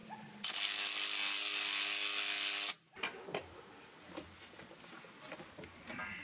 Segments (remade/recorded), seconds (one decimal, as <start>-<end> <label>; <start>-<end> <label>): 0.0-6.2 recorded